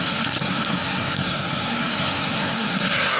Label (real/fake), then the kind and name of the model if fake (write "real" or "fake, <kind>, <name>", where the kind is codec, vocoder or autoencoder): fake, codec, SNAC